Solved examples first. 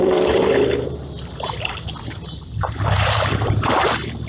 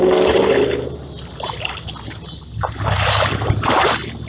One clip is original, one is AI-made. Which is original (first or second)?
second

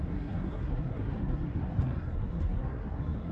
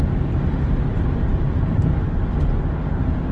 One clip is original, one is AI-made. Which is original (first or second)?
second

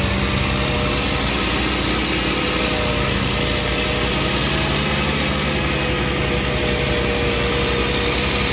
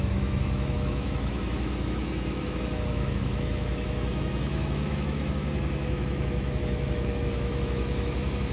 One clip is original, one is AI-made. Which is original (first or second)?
first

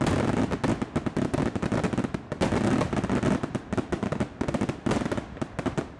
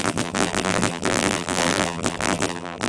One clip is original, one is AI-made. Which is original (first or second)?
first